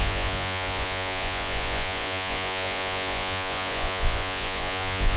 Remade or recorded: remade